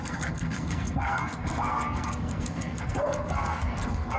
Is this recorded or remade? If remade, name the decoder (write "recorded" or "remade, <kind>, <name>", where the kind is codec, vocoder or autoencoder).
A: remade, codec, SNAC